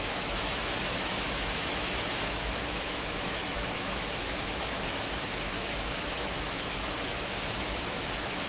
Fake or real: fake